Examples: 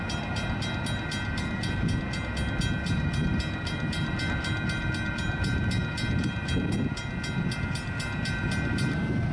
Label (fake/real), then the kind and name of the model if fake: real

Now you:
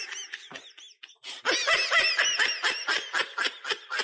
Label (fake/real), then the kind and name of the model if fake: real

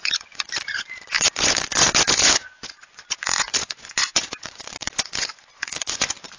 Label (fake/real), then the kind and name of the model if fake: fake, vocoder, Vocos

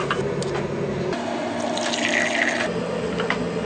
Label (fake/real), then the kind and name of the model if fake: real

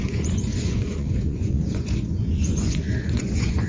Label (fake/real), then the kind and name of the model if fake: fake, vocoder, Vocos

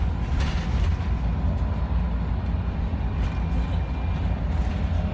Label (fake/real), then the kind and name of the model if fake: real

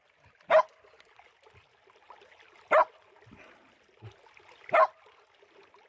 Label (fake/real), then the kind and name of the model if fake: real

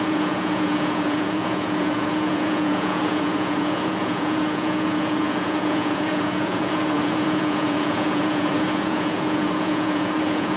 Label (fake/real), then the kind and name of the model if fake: fake, vocoder, Vocos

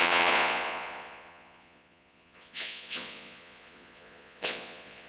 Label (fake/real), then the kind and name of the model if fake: fake, vocoder, Vocos